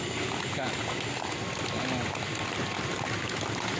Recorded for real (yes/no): yes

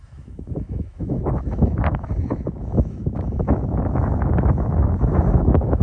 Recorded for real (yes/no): no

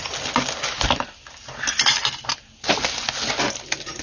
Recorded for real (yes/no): yes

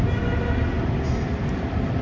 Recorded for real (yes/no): yes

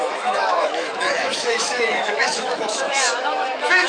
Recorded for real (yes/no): no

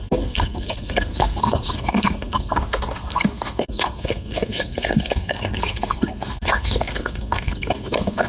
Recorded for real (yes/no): no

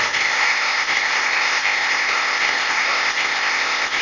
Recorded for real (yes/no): no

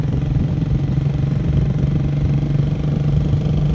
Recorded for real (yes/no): yes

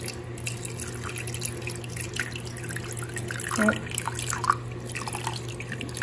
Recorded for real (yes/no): yes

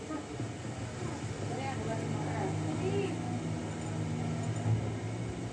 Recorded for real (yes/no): yes